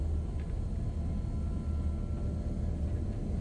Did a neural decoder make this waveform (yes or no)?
no